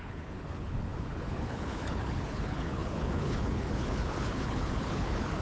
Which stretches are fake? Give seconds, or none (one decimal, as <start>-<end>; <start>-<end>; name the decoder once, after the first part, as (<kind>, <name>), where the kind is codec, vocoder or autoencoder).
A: 0.0-5.4 (codec, HILCodec)